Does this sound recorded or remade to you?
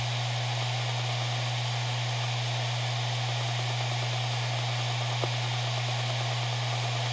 recorded